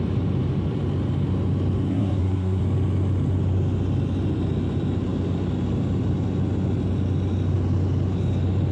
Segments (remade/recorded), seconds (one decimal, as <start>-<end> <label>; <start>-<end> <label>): 0.0-1.9 recorded; 1.9-2.6 remade; 2.6-8.7 recorded